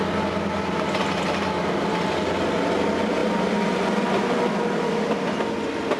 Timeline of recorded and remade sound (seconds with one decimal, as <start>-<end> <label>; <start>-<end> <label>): 0.0-6.0 recorded